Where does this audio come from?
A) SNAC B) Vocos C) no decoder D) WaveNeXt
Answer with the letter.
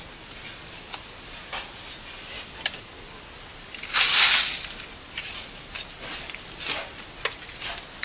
C